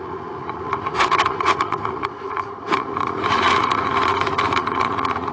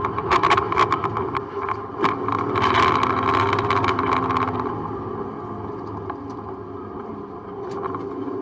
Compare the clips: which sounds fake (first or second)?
first